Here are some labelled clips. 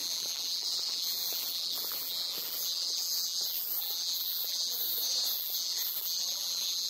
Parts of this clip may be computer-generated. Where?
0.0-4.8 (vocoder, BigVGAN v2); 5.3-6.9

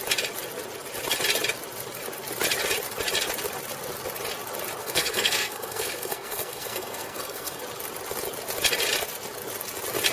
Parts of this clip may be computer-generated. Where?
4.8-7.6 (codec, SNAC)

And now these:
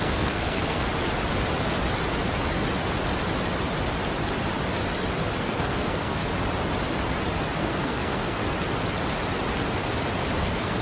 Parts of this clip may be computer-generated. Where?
0.0-0.9 (codec, SNAC); 5.4-6.3; 7.6-8.4; 10.4-10.8

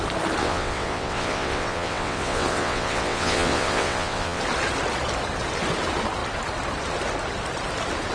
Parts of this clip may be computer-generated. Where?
0.4-4.4 (vocoder, WaveNeXt)

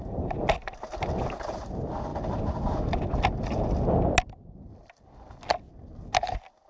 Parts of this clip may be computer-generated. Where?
none

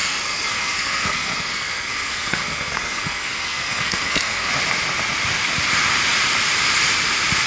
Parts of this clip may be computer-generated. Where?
0.0-4.5 (codec, SNAC)

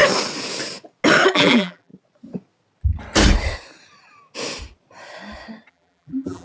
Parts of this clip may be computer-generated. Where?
1.3-1.9 (vocoder, BigVGAN v2); 5.7-6.4

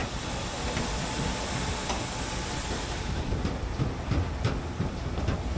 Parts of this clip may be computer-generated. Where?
none